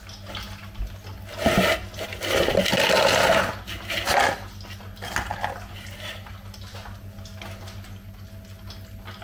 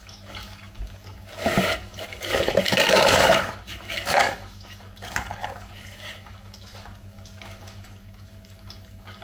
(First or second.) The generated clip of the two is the second